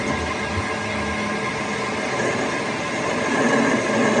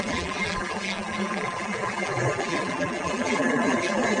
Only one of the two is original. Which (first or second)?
first